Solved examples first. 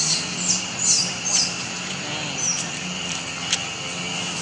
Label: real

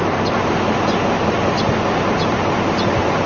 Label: real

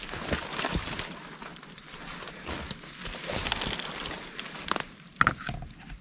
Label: real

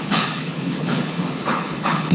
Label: fake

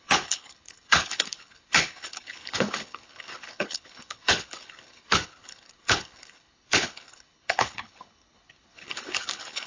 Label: fake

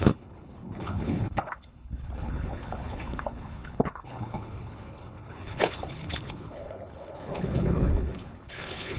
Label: fake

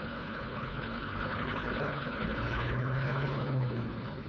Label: fake